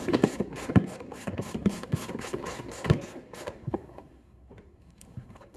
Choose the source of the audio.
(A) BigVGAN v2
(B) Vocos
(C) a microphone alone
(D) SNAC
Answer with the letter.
D